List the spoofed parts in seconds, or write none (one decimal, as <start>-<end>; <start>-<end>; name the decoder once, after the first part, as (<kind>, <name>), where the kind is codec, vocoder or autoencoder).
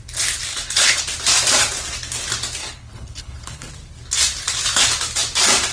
0.5-1.0 (codec, HILCodec); 2.6-3.7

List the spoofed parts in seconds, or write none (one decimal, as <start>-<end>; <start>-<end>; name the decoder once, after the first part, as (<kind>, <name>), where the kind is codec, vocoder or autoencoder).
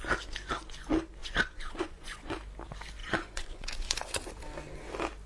1.2-2.3 (vocoder, Vocos); 3.0-4.3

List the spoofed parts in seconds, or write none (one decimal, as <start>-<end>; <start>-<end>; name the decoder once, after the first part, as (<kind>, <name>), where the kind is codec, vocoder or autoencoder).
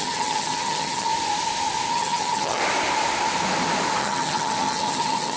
0.0-1.1 (vocoder, HiFi-GAN); 1.9-2.6; 4.0-5.4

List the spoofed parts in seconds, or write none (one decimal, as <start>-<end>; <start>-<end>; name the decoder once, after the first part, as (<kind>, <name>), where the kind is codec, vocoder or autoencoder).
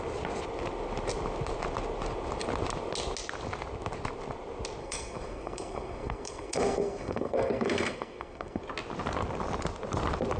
4.8-8.6 (codec, SNAC)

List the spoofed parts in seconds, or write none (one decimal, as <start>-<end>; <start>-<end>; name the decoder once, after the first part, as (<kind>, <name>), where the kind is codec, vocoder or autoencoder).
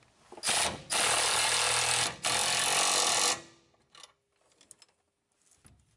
none